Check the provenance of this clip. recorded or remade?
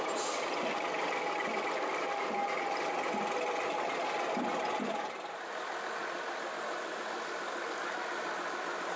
recorded